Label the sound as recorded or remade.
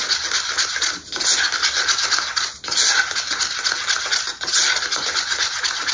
recorded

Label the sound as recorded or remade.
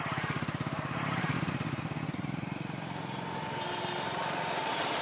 recorded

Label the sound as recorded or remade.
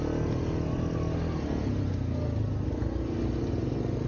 recorded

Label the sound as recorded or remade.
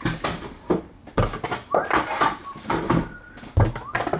recorded